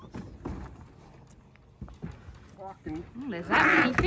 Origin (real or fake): real